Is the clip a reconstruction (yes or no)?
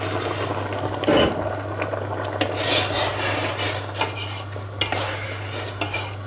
no